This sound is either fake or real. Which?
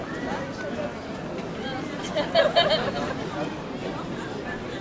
real